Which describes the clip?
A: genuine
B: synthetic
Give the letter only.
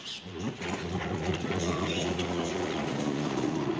B